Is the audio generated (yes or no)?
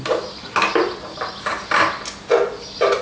no